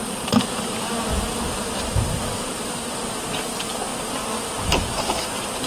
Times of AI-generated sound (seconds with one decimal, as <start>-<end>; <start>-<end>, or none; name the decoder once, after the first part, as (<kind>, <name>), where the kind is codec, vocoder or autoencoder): none